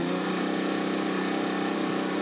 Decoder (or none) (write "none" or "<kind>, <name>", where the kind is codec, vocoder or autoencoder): vocoder, BigVGAN v2